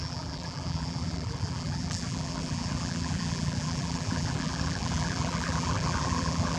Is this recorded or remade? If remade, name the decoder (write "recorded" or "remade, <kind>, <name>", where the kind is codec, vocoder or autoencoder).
remade, vocoder, BigVGAN v2